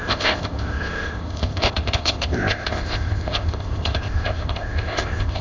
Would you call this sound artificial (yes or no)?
yes